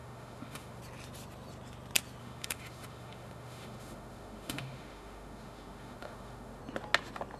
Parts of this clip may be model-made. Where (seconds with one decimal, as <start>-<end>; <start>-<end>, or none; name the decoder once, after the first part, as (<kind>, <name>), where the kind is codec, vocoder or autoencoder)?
0.0-0.8 (autoencoder, DAC-VAE); 2.2-6.6